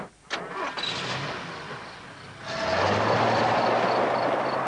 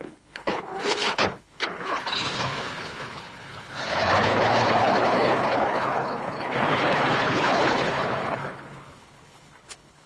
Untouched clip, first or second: first